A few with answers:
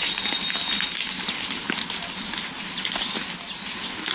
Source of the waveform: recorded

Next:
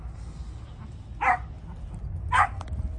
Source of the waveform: recorded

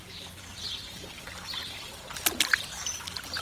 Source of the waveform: remade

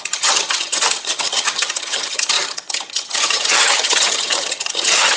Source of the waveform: remade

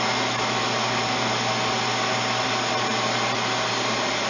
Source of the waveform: recorded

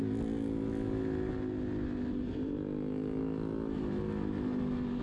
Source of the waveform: recorded